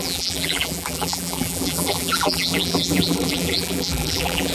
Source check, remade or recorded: remade